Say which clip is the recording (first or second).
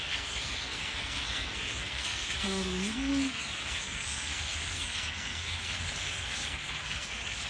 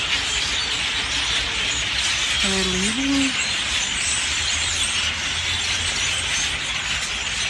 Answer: second